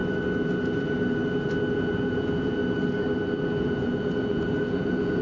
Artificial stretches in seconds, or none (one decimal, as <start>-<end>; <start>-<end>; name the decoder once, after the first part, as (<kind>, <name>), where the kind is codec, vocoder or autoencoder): 1.7-2.6 (vocoder, Vocos); 3.6-5.2